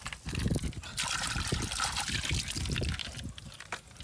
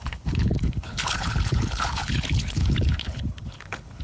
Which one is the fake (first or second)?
second